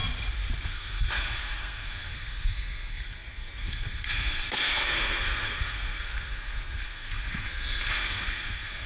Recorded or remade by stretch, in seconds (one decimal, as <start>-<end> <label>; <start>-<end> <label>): 0.0-0.6 recorded; 0.6-8.9 remade